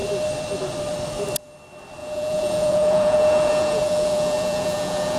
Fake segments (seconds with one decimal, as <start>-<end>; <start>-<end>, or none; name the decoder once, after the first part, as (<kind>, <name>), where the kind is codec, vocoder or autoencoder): 2.0-5.2 (vocoder, Vocos)